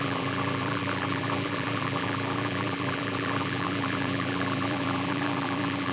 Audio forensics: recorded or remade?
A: remade